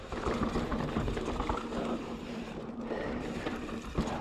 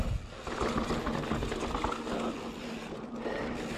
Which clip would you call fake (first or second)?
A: first